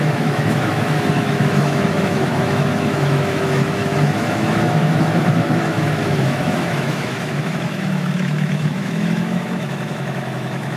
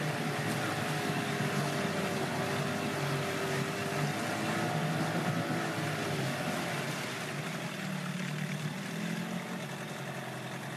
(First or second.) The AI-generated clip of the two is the first